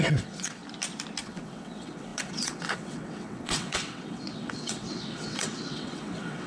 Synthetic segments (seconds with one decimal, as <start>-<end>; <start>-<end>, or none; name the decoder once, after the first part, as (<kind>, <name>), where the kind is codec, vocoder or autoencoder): 0.0-0.6 (vocoder, WaveNeXt); 1.2-6.5